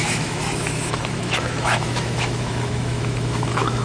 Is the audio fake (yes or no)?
yes